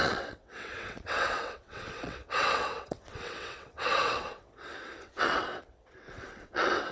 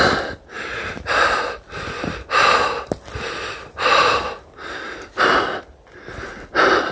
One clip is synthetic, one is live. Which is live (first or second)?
second